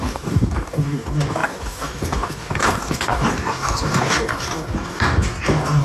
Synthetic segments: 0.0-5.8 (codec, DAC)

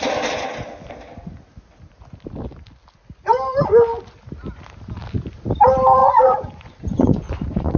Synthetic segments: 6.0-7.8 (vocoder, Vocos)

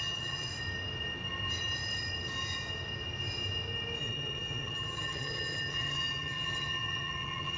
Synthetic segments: 0.0-0.5 (vocoder, HiFi-GAN); 4.0-7.6

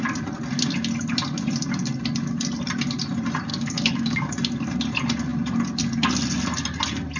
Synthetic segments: 3.5-4.3 (codec, DAC)

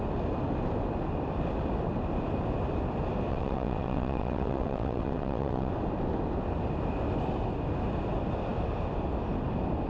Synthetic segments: 3.3-5.7 (vocoder, WaveNeXt)